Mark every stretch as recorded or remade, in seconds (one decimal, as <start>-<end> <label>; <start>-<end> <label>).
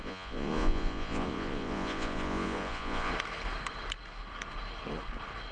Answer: 0.0-3.1 remade; 3.1-5.5 recorded